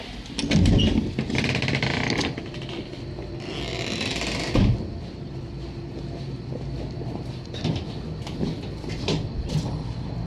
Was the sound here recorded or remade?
recorded